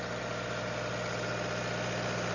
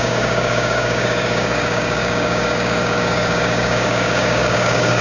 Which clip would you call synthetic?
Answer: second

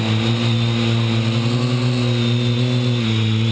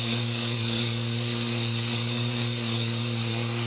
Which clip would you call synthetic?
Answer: second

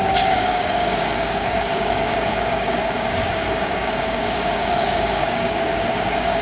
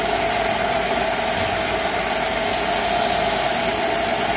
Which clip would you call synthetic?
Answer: first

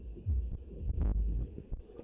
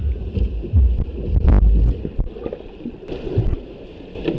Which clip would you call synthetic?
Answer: first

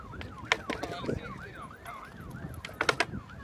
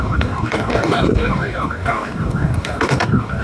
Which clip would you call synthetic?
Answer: second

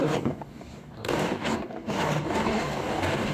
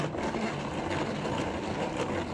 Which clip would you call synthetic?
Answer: first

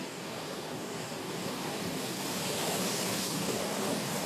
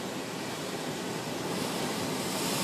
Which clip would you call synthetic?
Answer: first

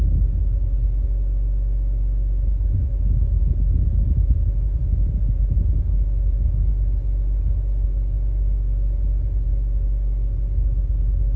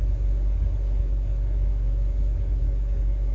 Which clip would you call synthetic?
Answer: second